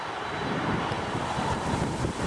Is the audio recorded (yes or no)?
no